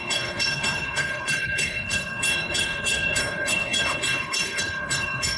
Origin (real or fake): fake